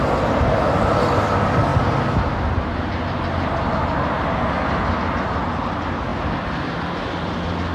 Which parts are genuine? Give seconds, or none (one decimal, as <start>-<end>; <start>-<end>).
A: 0.0-7.7